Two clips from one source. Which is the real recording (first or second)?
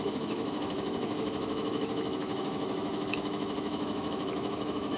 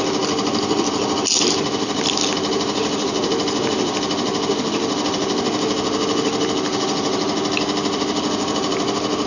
second